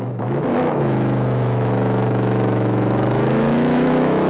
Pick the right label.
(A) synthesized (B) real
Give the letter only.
A